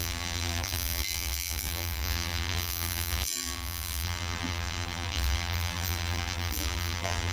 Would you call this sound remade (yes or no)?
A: yes